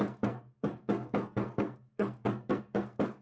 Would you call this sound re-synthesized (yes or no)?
yes